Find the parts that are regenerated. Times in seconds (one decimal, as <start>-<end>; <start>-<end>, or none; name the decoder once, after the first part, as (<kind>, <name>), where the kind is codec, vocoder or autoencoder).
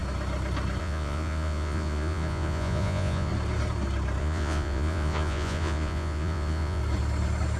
0.8-3.3 (vocoder, Vocos); 4.2-6.8